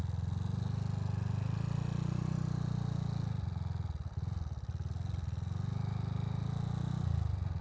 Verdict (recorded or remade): recorded